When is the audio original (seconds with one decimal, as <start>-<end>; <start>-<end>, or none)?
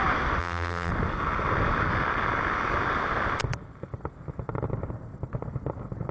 0.0-0.4; 0.9-6.1